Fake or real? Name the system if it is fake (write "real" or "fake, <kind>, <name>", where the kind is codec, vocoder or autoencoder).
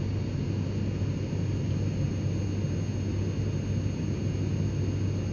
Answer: real